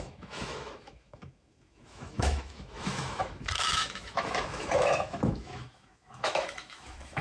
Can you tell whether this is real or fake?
fake